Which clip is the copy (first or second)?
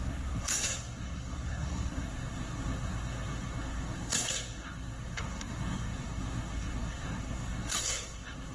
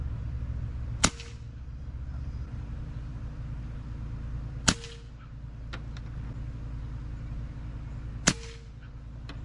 first